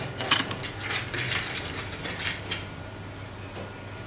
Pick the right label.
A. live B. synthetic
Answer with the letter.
A